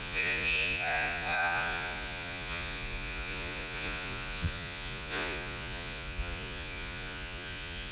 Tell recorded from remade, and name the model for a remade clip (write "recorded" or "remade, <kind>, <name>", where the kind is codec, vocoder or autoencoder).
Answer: remade, vocoder, Vocos